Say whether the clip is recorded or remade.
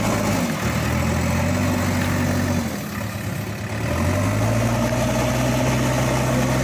recorded